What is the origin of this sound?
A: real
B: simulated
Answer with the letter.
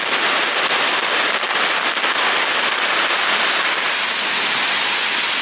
A